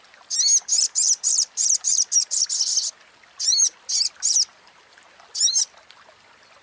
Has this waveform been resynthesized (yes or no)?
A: no